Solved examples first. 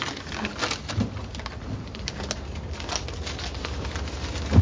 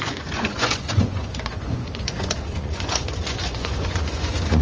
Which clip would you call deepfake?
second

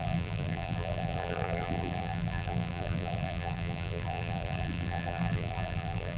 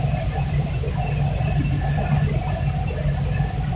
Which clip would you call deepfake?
first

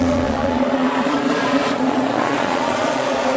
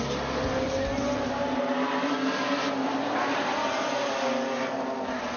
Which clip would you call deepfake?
first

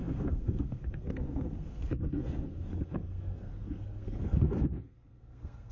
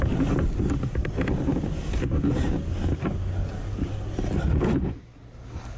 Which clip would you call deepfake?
first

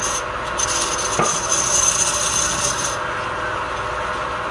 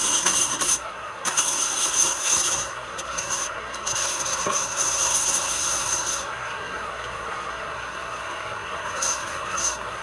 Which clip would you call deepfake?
second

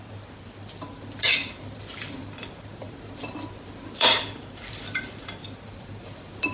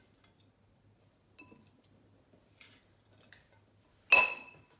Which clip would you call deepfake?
first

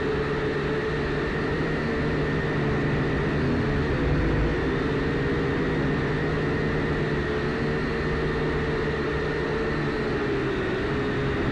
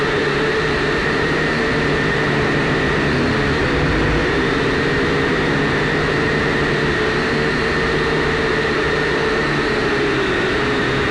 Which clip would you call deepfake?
second